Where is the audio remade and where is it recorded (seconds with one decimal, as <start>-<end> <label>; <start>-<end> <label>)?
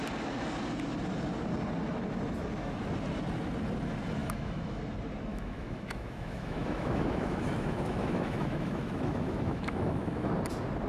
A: 0.0-4.2 recorded; 4.2-4.8 remade; 4.8-5.3 recorded; 5.3-10.3 remade; 10.3-10.9 recorded